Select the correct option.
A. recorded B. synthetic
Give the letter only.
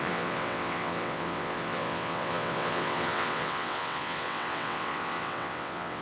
B